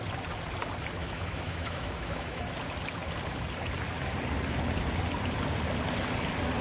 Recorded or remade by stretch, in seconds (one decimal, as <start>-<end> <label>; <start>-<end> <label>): 0.0-1.0 recorded; 1.0-2.4 remade; 2.4-6.6 recorded